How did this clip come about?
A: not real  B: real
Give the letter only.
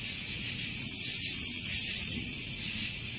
A